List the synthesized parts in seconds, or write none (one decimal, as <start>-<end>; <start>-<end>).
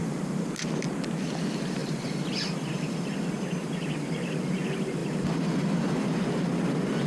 0.0-0.5; 1.8-3.3; 5.0-6.0